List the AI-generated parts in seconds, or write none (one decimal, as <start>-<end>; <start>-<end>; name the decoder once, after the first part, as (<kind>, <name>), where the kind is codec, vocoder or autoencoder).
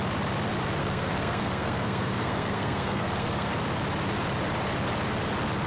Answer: 0.8-3.5 (codec, SNAC)